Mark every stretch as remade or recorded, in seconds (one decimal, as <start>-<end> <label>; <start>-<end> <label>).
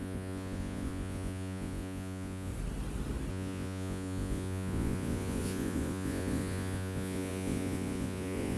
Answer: 0.0-2.5 remade; 2.5-3.3 recorded; 3.3-8.6 remade